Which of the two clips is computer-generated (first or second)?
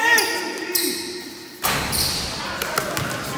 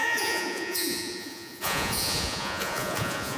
second